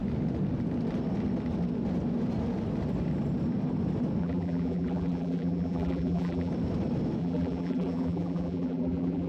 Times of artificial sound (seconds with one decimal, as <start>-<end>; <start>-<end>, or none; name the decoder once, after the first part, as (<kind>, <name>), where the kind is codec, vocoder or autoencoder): 4.2-6.5 (vocoder, BigVGAN v2); 7.2-9.3